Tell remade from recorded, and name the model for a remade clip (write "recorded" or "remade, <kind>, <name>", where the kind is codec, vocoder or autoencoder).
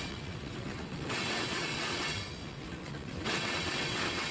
remade, vocoder, WaveNeXt